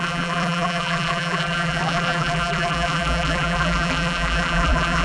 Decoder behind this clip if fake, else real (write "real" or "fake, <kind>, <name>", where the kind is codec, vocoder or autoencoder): fake, vocoder, BigVGAN v2